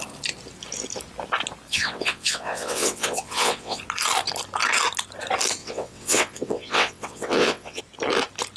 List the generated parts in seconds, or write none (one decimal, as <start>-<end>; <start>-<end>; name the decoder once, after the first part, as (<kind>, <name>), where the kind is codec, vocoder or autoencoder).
1.7-3.8 (vocoder, WaveNeXt); 5.6-7.8